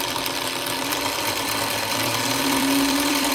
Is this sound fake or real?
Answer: fake